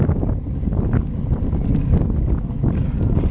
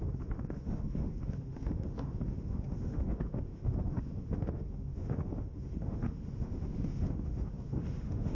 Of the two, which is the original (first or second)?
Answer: first